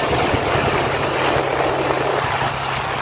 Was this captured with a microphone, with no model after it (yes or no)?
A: yes